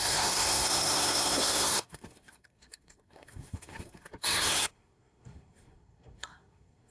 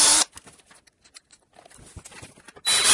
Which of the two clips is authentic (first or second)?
second